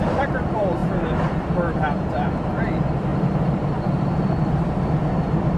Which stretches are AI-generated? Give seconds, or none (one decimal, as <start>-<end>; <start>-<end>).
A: 0.0-5.6